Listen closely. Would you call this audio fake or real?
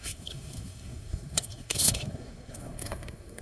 fake